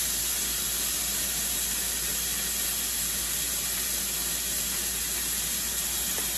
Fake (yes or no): no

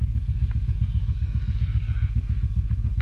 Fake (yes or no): yes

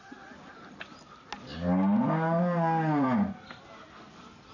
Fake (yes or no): no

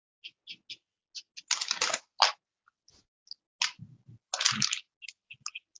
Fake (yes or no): no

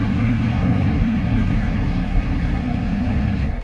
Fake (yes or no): yes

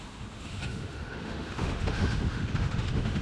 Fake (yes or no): yes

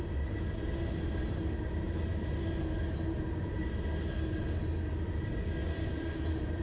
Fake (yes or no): no